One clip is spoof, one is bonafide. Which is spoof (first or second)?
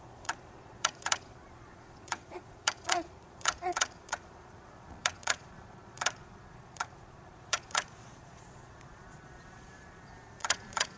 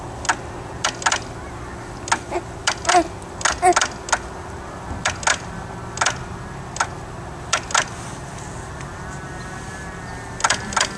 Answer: first